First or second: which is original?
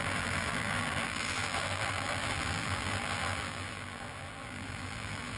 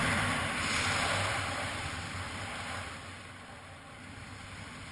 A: second